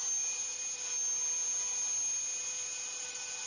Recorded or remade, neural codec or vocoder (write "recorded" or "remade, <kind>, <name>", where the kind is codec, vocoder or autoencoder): recorded